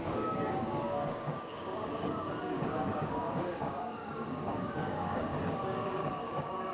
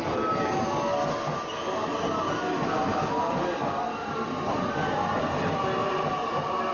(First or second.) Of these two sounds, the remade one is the first